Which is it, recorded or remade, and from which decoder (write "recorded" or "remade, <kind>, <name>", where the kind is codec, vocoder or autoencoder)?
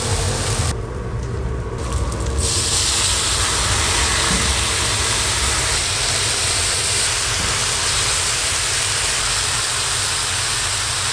recorded